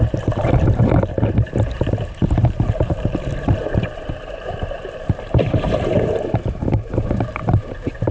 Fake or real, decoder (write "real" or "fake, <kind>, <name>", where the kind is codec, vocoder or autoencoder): fake, vocoder, BigVGAN v2